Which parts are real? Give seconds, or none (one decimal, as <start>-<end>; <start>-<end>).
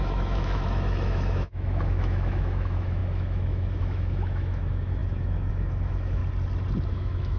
6.2-6.9